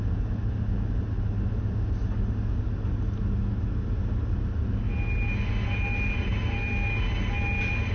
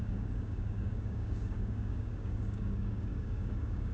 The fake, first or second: second